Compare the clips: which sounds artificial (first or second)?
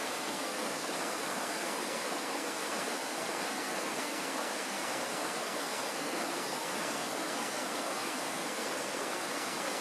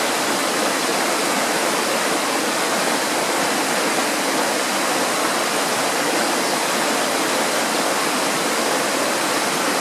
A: first